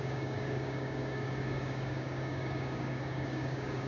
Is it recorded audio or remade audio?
remade